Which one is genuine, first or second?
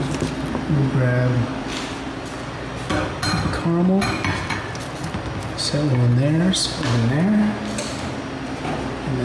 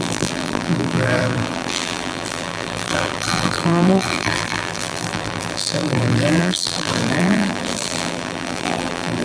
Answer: first